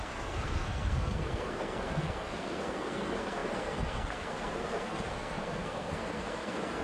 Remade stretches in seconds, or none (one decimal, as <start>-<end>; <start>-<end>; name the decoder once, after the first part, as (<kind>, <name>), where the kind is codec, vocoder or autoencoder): 0.0-6.8 (codec, SNAC)